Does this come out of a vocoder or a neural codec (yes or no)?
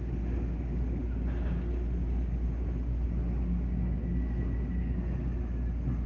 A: no